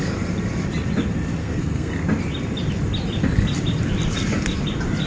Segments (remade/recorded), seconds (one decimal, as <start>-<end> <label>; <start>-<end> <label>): 0.0-1.4 recorded; 1.4-1.9 remade; 1.9-5.1 recorded